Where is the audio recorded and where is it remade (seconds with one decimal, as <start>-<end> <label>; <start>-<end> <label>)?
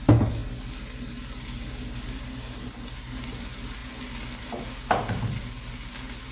0.0-6.3 recorded